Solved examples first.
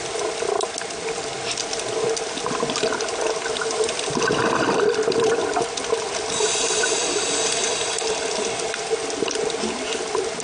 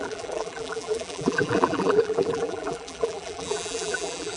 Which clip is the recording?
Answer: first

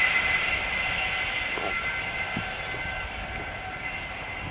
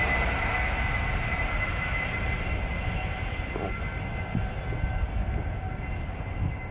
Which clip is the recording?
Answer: second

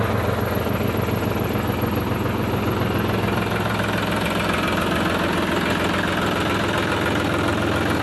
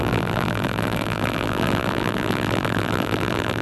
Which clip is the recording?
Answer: first